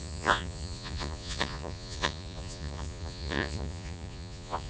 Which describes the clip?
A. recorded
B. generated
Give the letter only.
B